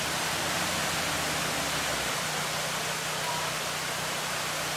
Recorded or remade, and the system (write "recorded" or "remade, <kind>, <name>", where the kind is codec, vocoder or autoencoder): recorded